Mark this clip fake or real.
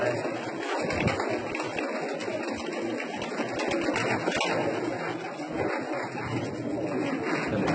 real